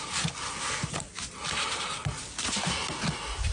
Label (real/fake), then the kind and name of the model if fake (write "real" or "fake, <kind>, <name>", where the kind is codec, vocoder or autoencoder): fake, vocoder, BigVGAN v2